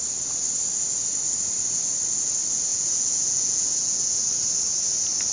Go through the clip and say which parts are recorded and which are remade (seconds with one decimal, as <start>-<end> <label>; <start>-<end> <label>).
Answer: 0.0-2.7 recorded; 2.7-4.2 remade; 4.2-5.3 recorded